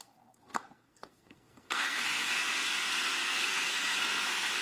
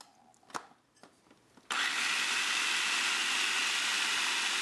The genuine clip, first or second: second